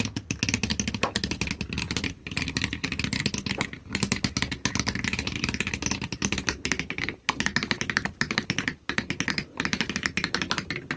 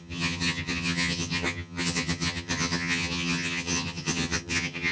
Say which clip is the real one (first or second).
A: first